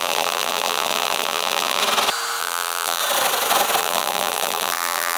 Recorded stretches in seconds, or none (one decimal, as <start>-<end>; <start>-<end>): 1.8-2.4; 3.0-3.8

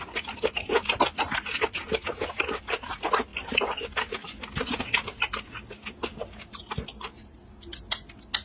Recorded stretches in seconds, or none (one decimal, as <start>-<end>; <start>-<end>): 0.0-3.3; 4.5-8.4

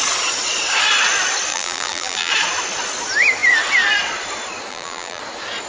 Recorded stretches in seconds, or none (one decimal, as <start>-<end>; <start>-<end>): 0.0-1.5; 2.3-4.7; 5.2-5.7

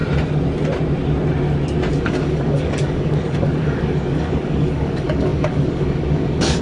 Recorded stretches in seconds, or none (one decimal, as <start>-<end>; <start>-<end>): 0.0-1.9